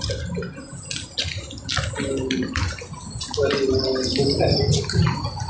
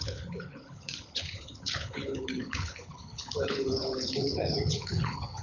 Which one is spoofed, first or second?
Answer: second